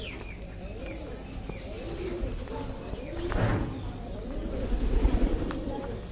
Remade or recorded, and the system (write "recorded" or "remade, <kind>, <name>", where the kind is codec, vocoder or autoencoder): recorded